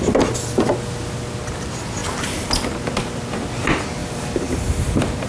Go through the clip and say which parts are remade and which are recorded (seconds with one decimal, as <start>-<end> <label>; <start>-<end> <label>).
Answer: 0.0-4.0 recorded; 4.0-5.3 remade